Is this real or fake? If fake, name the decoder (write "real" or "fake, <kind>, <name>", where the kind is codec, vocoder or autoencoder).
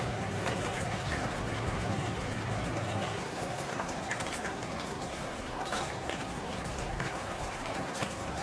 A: fake, codec, SNAC